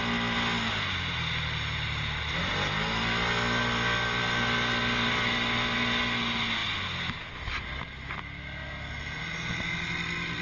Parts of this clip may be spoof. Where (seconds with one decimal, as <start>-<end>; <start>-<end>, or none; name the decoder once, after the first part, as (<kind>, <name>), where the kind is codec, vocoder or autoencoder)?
none